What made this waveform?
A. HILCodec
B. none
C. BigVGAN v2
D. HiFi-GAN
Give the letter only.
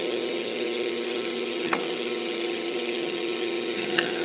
D